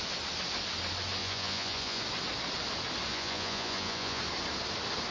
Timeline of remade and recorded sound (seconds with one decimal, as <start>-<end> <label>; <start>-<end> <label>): 0.0-1.2 recorded; 1.2-2.0 remade; 2.0-3.1 recorded; 3.1-4.2 remade; 4.2-5.1 recorded